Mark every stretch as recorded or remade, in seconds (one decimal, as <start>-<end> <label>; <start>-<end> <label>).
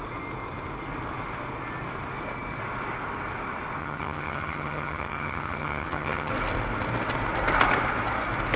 0.0-3.8 recorded; 3.8-6.3 remade; 6.3-8.6 recorded